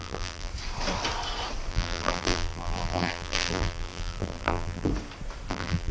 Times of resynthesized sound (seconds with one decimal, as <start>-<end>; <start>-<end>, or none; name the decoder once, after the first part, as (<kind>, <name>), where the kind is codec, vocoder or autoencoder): 0.0-0.5 (vocoder, BigVGAN v2); 1.7-4.9; 5.5-5.9